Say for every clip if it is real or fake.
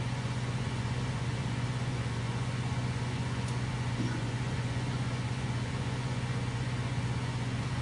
fake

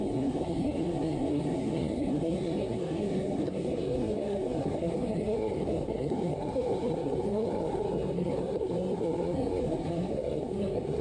fake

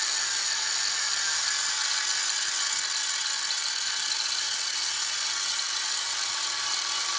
real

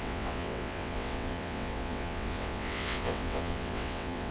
fake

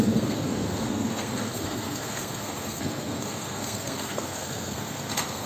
fake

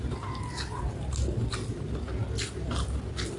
real